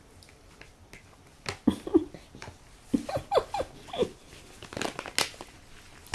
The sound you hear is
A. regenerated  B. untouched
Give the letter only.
B